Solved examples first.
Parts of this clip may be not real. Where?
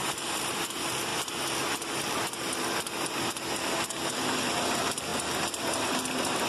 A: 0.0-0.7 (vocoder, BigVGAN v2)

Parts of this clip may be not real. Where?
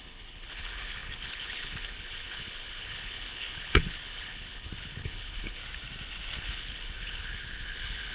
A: 0.0-5.6 (codec, HILCodec); 6.4-8.1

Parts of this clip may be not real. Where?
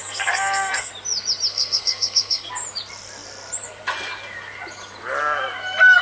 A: 0.0-0.9 (codec, SNAC); 1.5-2.5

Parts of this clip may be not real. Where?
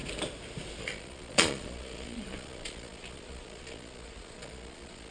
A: 0.8-5.1 (vocoder, Vocos)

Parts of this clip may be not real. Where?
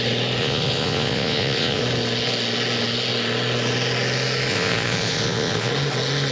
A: 0.4-1.8 (vocoder, Vocos); 4.5-5.7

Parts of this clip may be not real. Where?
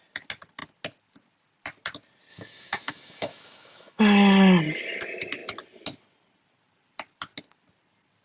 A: 2.3-4.0 (autoencoder, DAC-VAE)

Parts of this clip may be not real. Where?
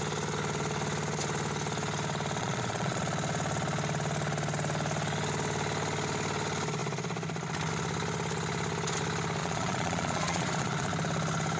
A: 2.4-3.0 (vocoder, Vocos); 9.4-10.9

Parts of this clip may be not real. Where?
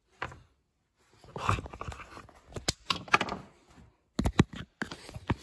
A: none